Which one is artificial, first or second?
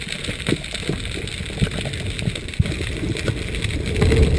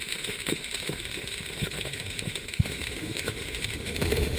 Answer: second